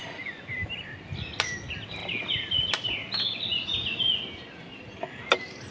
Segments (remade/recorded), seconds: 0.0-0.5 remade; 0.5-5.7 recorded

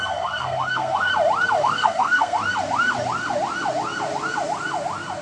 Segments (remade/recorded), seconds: 0.0-1.1 remade; 1.1-1.6 recorded; 1.6-2.4 remade; 2.4-5.2 recorded

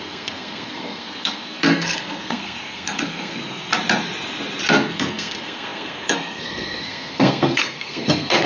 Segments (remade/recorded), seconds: 0.0-3.7 remade; 3.7-4.7 recorded; 4.7-8.5 remade

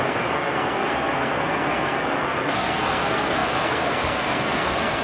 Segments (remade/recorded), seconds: 0.0-5.0 remade

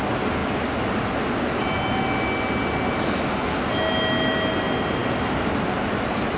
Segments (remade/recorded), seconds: 0.0-6.4 recorded

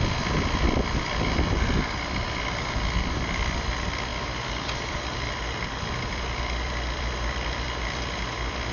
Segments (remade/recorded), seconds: 0.0-4.1 remade; 4.1-4.9 recorded; 4.9-8.7 remade

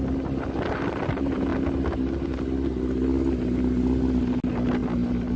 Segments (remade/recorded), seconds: 0.0-5.4 recorded